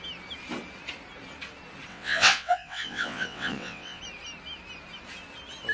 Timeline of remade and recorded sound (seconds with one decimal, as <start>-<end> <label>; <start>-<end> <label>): 0.0-1.9 recorded; 1.9-4.0 remade; 4.0-5.7 recorded